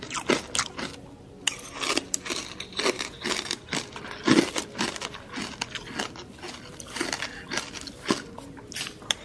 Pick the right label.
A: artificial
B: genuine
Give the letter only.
B